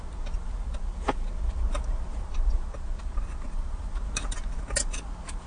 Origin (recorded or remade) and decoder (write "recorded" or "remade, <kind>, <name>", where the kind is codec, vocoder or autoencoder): recorded